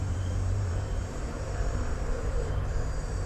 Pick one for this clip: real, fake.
fake